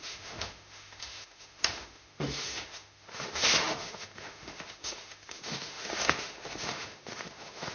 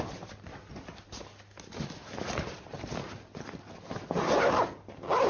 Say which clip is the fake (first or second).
first